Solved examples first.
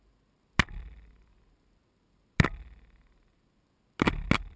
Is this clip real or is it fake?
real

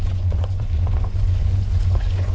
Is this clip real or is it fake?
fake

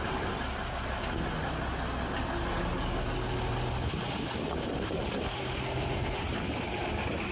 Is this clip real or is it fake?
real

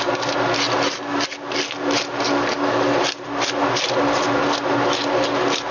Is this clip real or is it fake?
real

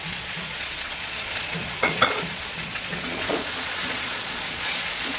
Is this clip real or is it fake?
fake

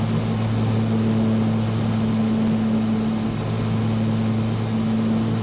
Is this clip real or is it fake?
real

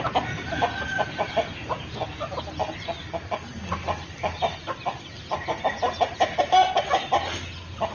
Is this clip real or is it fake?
real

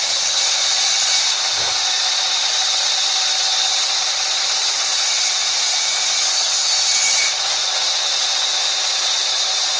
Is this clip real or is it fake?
real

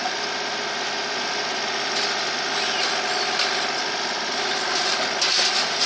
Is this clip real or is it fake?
real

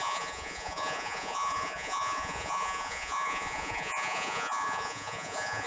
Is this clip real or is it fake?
fake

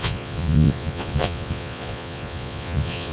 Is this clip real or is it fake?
fake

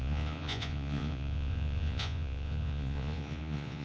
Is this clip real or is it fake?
fake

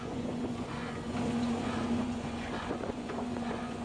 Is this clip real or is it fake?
fake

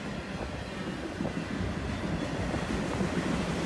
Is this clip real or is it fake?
real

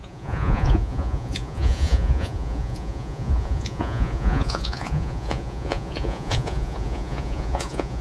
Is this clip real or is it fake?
fake